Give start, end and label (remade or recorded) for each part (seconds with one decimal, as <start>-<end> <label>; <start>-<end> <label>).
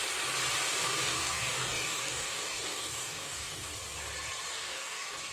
0.0-0.8 recorded; 0.8-3.7 remade; 3.7-4.5 recorded; 4.5-5.3 remade